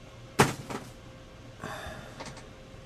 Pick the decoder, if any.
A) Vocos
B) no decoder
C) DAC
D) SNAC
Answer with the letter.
B